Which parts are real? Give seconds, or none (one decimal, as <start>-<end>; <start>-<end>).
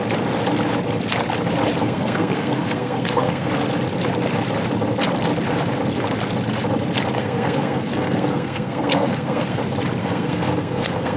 0.0-1.8; 3.5-7.2; 9.6-10.0